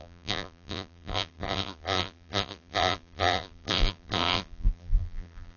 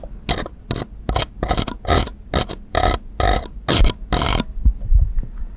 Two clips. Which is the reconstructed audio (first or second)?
first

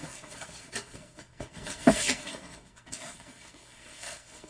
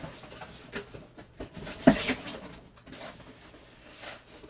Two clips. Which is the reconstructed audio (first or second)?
first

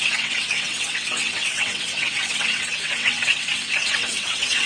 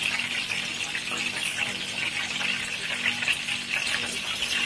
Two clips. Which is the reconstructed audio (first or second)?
first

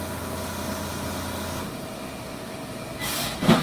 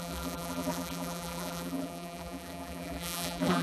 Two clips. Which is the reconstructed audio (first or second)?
second